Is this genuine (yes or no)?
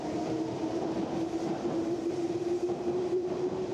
no